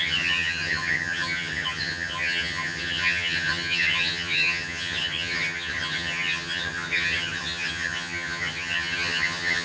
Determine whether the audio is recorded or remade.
remade